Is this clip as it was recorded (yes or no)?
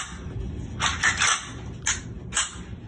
yes